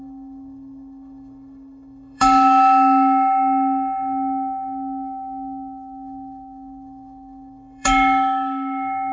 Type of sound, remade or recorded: remade